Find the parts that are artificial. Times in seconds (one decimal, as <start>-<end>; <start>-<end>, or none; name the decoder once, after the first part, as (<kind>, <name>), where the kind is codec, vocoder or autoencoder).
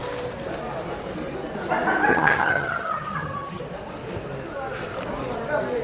2.1-3.6 (vocoder, HiFi-GAN)